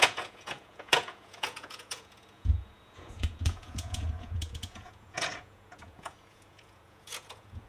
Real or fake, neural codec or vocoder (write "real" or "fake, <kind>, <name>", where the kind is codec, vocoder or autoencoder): fake, vocoder, Vocos